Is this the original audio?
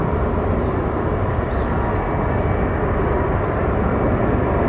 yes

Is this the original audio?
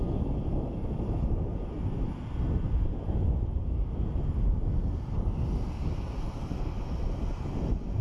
yes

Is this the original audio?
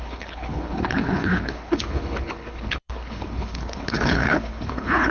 no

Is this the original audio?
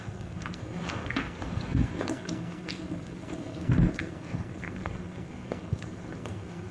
no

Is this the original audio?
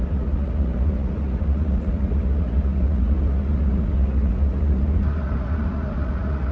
no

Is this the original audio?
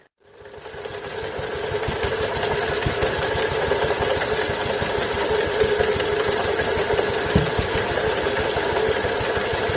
yes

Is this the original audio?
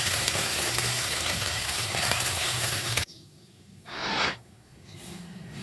no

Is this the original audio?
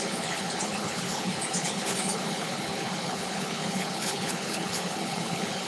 no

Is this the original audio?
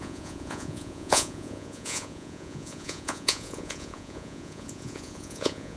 no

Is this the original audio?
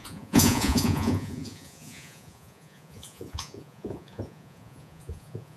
no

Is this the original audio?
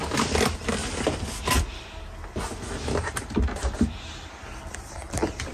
yes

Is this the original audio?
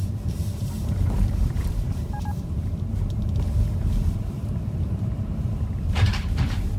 no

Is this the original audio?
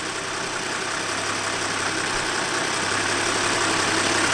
yes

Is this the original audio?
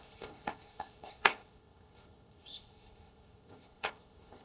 no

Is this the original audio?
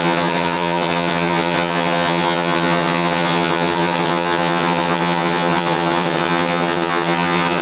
no